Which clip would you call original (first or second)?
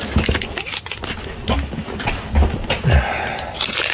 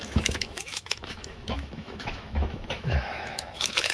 first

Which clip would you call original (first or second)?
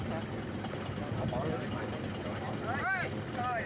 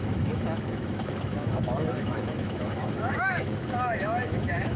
first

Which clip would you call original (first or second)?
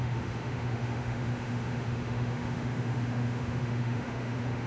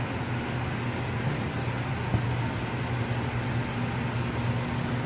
second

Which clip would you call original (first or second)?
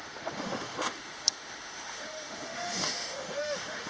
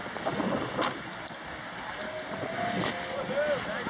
second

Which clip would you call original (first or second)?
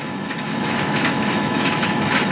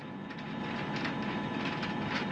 second